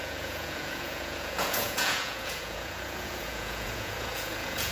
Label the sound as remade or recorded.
remade